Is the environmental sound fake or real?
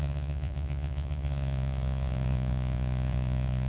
fake